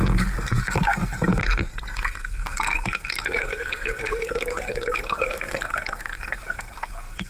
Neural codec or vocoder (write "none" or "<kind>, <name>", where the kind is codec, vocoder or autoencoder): codec, SNAC